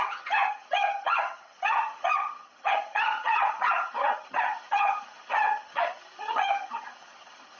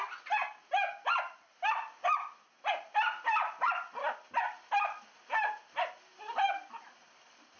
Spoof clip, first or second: first